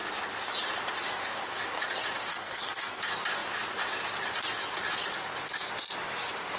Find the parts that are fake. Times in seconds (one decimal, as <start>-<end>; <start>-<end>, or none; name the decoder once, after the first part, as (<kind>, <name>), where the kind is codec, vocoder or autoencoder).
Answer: 2.3-3.0 (codec, SNAC)